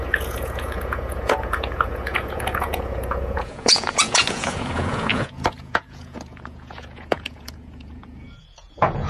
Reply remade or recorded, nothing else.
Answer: remade